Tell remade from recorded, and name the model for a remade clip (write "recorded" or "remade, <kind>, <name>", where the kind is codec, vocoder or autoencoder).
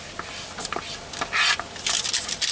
recorded